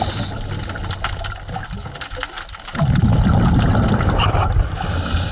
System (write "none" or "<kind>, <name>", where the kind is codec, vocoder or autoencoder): none